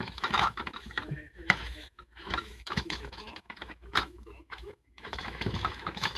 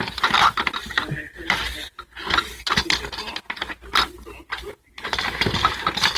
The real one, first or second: second